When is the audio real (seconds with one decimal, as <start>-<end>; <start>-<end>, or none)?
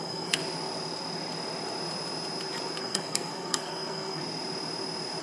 0.4-2.8; 4.2-5.2